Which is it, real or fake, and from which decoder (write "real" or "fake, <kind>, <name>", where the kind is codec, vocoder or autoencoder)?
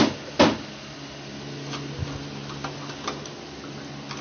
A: real